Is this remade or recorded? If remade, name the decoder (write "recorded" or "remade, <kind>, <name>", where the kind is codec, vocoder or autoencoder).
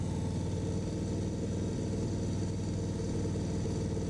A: recorded